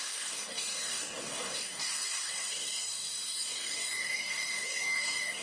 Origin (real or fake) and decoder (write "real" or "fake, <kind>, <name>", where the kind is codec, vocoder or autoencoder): fake, codec, DAC